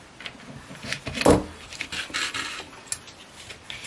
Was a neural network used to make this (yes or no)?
no